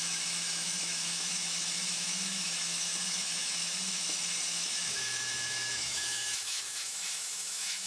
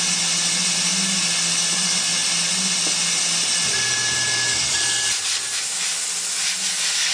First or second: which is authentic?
second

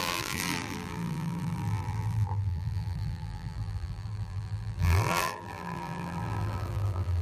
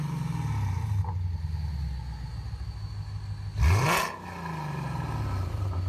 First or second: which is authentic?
second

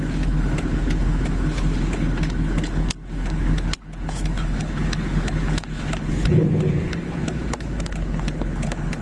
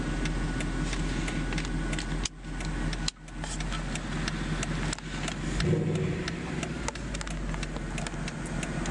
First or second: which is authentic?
second